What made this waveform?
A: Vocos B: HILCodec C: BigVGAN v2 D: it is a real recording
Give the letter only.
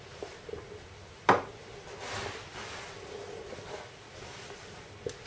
D